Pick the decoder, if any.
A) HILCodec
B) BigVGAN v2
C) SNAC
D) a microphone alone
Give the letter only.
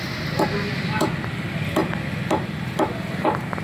D